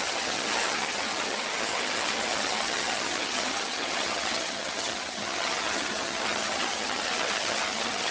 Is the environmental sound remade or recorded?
remade